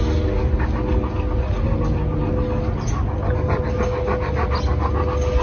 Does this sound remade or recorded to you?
recorded